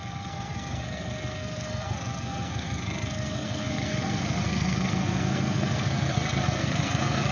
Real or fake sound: fake